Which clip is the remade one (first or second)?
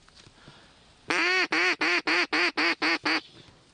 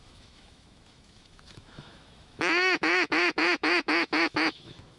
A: second